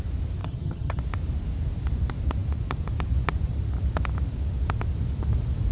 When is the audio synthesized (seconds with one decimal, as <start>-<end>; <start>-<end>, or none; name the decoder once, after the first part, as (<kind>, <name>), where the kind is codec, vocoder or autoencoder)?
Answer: 0.4-1.0 (vocoder, HiFi-GAN)